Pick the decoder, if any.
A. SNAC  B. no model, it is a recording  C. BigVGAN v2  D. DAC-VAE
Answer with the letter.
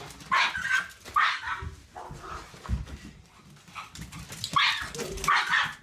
B